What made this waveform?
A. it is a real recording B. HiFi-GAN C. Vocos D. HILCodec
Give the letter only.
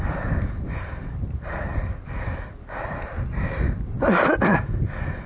A